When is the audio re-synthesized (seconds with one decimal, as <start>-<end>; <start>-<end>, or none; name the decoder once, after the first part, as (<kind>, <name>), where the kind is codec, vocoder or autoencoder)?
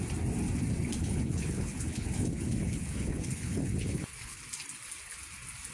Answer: 1.0-4.4 (codec, HILCodec)